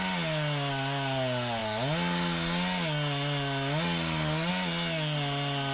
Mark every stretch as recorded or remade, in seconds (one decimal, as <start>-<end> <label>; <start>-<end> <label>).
0.0-5.7 recorded